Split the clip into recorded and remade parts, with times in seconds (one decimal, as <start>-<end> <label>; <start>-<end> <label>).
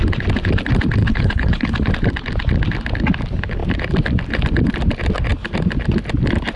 0.0-1.0 recorded; 1.0-1.9 remade; 1.9-6.6 recorded